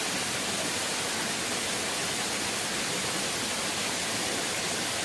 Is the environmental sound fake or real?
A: real